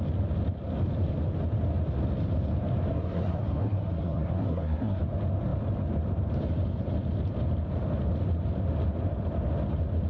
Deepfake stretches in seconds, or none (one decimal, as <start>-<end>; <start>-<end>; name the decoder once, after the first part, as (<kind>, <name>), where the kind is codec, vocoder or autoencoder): 2.9-5.0 (codec, SNAC)